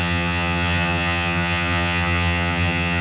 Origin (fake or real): fake